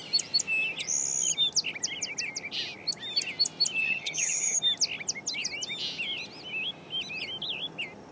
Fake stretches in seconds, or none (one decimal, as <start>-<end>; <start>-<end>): 3.8-4.6

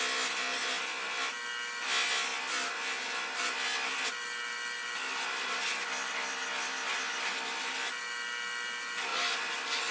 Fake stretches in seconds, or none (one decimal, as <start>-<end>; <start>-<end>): none